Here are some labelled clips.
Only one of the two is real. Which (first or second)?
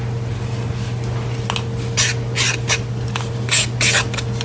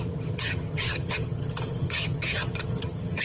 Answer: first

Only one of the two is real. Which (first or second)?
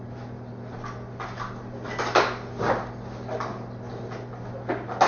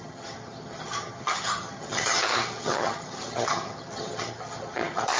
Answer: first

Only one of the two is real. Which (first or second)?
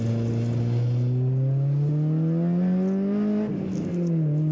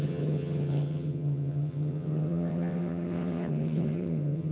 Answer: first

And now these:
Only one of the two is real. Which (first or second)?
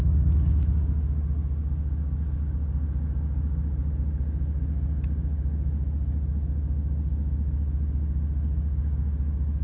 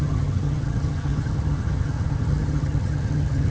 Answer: first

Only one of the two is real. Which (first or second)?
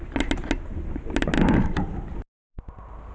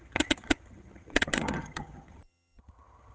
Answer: first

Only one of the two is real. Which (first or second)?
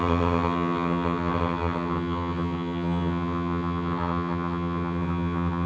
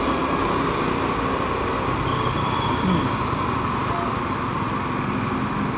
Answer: second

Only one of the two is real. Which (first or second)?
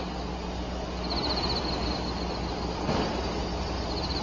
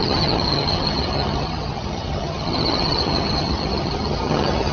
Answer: first